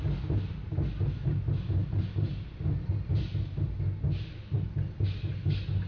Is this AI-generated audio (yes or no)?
no